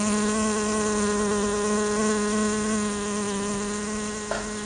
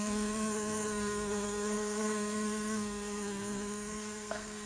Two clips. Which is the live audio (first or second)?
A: first